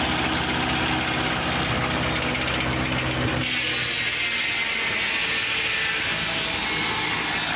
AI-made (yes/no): no